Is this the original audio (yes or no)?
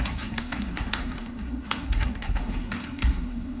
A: no